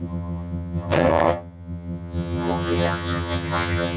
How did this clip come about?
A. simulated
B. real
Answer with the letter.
A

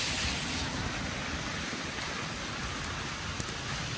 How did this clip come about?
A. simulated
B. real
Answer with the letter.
B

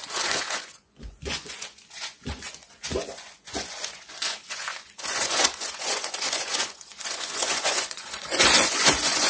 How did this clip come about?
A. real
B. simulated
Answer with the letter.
B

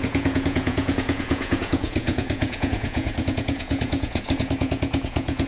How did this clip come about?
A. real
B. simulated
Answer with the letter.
B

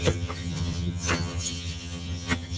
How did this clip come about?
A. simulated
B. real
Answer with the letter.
A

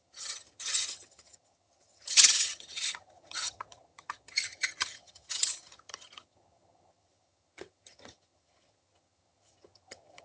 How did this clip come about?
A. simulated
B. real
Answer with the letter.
A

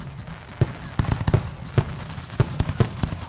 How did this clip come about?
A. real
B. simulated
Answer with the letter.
A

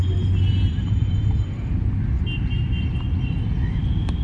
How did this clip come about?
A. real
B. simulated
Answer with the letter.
A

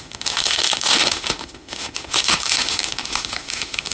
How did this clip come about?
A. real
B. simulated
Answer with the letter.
B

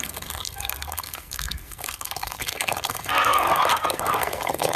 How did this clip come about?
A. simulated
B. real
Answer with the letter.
A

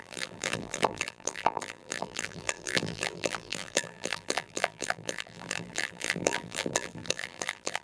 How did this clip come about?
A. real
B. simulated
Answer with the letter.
B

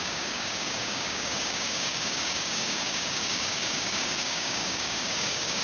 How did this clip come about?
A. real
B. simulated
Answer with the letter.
B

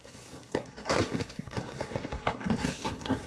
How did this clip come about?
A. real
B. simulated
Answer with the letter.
B